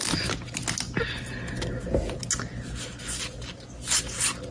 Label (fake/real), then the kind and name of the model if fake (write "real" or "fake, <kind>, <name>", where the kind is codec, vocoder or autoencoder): real